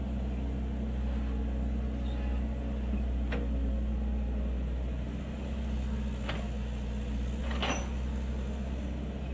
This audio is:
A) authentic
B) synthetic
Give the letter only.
A